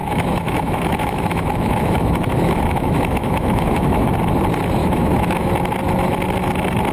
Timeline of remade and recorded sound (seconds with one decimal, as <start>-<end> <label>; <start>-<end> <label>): 0.0-4.1 remade; 4.1-4.8 recorded; 4.8-5.5 remade; 5.5-6.9 recorded